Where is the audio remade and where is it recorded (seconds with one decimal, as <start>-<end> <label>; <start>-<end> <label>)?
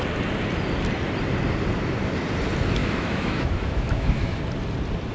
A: 0.0-2.8 recorded; 2.8-4.4 remade; 4.4-5.1 recorded